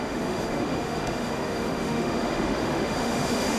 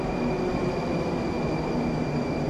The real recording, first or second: second